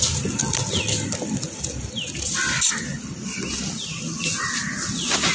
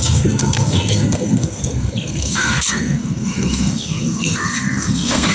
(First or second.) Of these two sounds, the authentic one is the first